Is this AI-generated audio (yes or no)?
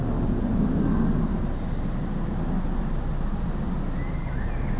no